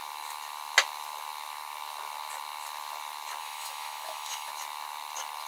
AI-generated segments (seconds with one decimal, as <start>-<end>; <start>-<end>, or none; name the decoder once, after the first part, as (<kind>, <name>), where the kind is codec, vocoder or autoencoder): 3.4-4.5 (autoencoder, DAC-VAE)